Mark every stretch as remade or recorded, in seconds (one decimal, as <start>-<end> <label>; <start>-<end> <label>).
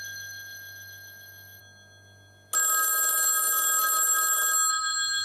0.0-1.6 remade; 1.6-4.7 recorded; 4.7-5.2 remade